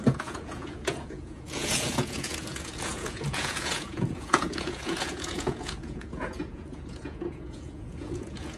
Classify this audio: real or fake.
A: fake